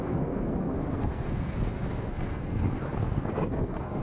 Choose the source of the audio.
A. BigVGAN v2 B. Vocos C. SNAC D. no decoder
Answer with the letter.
C